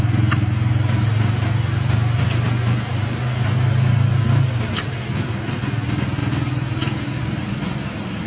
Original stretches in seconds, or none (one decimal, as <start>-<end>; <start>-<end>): 0.0-8.3